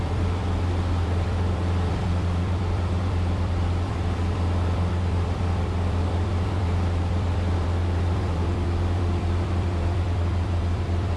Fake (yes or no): yes